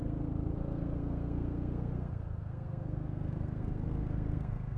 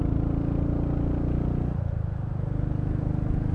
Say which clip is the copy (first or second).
first